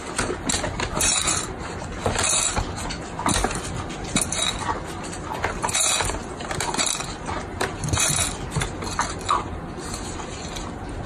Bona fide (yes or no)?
yes